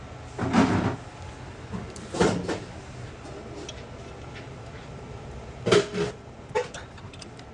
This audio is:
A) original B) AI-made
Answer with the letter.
A